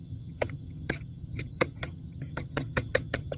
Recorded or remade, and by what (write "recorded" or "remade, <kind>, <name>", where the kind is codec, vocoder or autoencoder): remade, vocoder, HiFi-GAN